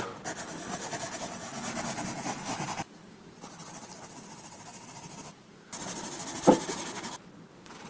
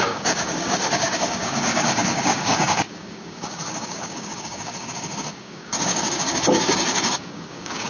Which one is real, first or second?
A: first